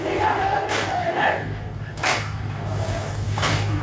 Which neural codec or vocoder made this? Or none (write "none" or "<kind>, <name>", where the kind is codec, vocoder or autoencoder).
codec, DAC